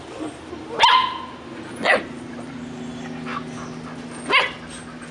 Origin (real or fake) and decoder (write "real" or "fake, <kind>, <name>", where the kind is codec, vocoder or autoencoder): real